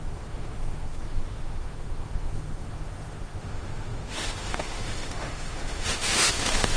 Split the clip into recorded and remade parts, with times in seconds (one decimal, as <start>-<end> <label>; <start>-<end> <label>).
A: 0.0-6.8 remade